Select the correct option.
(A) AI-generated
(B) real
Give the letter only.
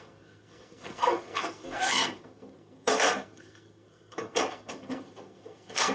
A